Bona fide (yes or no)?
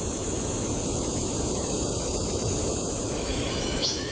no